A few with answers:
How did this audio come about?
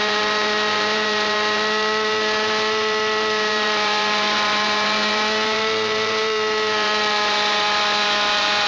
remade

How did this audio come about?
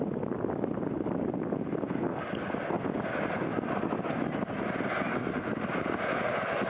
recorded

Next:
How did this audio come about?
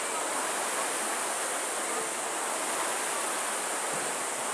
recorded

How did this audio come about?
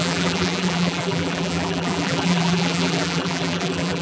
remade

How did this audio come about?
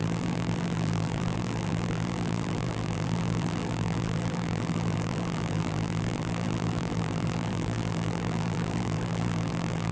remade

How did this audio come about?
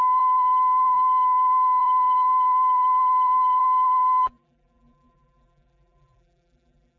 remade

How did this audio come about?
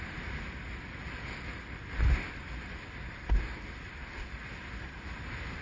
remade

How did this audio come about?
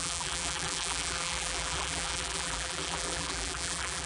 remade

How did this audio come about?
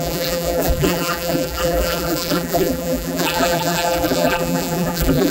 remade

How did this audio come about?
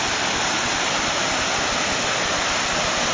recorded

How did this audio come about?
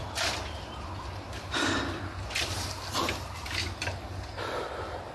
remade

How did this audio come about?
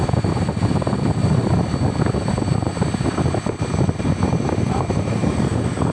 remade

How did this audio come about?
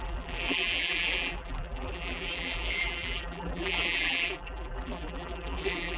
remade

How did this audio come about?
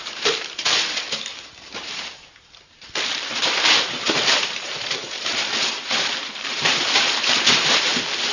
remade